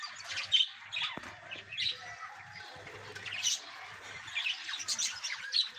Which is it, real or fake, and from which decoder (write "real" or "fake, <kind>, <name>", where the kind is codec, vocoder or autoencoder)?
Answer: real